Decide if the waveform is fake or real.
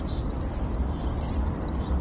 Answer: real